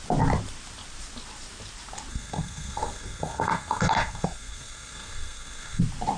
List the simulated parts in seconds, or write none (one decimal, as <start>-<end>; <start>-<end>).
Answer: 2.1-5.8